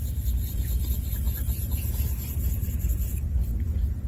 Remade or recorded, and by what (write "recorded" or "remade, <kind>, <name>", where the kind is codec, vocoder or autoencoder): recorded